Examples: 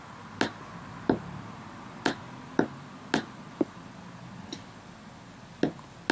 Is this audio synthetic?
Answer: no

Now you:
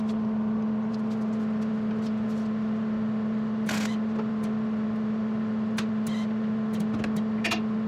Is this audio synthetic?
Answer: no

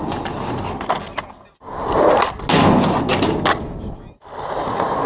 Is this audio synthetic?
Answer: no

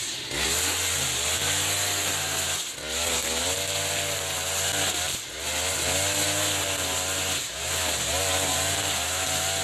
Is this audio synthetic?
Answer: no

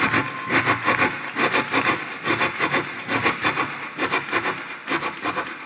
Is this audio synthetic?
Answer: no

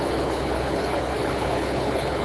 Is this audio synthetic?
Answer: yes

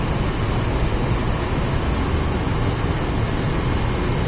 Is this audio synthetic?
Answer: no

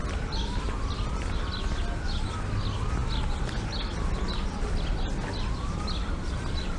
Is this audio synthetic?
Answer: no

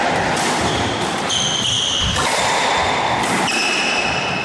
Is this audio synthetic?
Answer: no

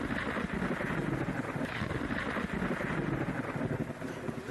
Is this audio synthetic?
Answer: no